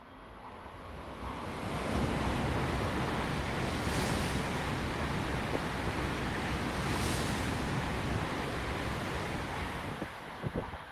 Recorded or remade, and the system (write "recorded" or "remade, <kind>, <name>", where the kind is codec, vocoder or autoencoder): recorded